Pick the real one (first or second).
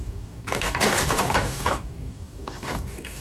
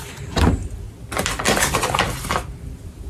second